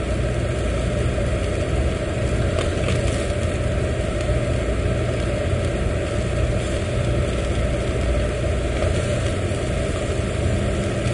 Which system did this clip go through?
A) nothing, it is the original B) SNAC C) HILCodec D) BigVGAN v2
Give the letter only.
A